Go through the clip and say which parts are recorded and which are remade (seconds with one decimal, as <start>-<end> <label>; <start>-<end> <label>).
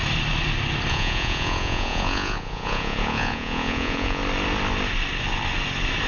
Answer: 0.0-0.9 recorded; 0.9-4.2 remade; 4.2-6.1 recorded